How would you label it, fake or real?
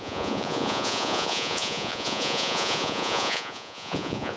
fake